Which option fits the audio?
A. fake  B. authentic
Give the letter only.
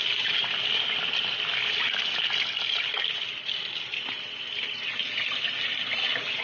B